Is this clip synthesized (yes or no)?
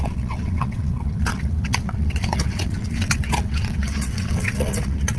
yes